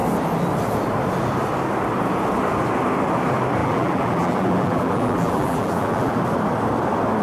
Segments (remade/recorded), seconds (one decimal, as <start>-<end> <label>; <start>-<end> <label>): 0.0-3.6 recorded; 3.6-6.2 remade; 6.2-7.2 recorded